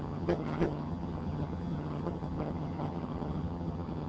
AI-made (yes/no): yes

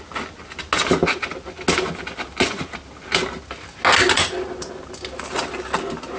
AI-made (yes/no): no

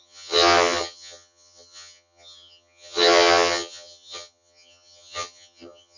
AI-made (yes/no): yes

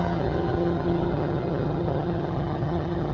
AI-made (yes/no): yes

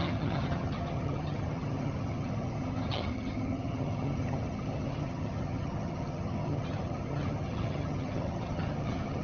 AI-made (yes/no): yes